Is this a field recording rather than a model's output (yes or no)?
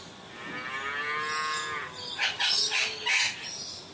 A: yes